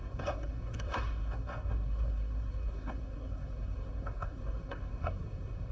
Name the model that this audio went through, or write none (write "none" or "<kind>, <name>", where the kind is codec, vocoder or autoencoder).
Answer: codec, SNAC